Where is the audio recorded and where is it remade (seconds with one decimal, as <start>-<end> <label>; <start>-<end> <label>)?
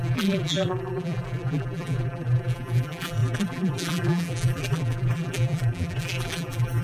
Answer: 0.0-6.8 remade